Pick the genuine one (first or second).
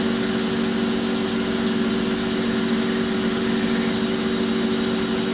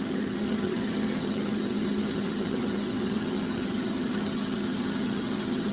first